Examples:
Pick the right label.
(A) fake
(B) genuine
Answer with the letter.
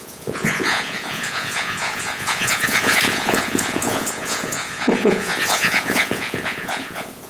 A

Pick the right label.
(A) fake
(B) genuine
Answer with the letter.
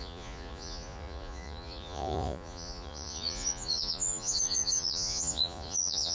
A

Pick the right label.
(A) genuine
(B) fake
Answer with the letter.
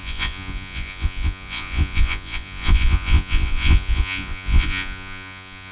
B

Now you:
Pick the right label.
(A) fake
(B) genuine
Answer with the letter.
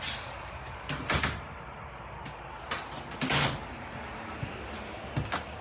B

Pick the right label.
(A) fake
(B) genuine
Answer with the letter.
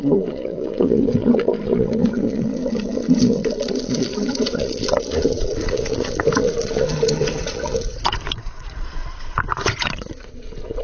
A